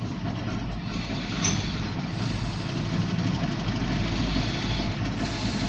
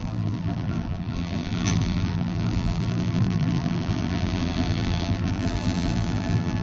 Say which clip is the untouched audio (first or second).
first